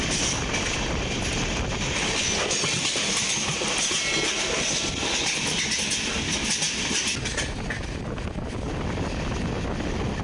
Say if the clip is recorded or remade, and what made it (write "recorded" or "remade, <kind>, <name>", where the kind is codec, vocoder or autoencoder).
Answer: recorded